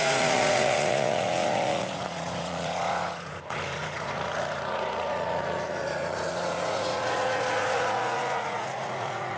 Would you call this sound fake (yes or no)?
yes